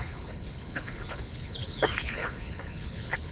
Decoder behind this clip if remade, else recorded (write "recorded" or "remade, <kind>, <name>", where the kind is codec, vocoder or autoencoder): remade, codec, HILCodec